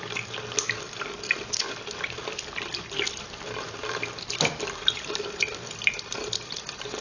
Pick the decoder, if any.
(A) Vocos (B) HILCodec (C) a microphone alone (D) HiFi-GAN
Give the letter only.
C